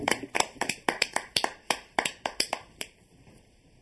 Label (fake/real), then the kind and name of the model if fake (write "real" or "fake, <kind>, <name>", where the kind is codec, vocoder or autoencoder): fake, vocoder, BigVGAN v2